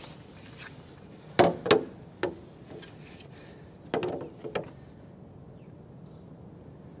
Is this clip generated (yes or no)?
no